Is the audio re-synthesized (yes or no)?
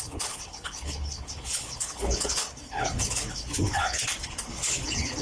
yes